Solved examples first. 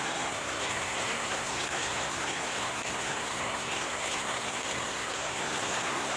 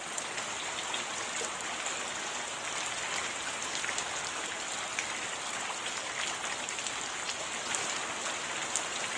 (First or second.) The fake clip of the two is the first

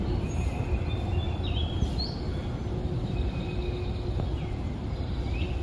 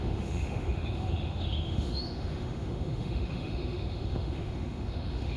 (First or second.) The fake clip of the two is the second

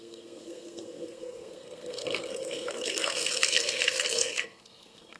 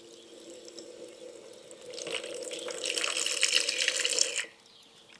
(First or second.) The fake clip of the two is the first